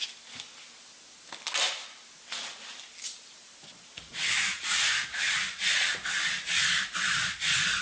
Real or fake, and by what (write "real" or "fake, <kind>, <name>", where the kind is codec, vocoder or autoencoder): real